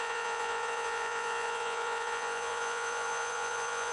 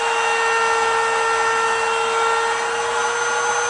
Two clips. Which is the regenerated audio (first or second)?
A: first